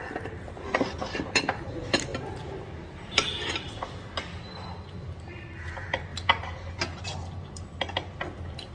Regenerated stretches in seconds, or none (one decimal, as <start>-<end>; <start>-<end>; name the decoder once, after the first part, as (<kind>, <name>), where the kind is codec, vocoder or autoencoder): none

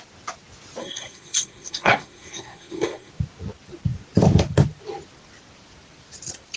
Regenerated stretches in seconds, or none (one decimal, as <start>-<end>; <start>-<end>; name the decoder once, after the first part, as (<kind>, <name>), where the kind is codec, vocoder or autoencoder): 0.8-3.1 (codec, SNAC)

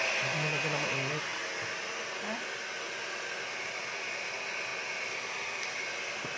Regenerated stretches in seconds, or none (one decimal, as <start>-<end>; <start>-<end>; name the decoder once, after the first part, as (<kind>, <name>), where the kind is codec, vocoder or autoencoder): none

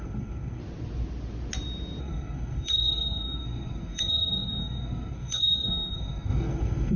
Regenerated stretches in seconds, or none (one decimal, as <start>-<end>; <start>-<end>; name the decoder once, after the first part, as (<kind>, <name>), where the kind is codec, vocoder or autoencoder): 0.0-0.6 (codec, SNAC); 2.0-7.0